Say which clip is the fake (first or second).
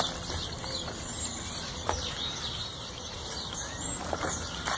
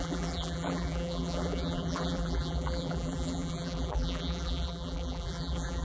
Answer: second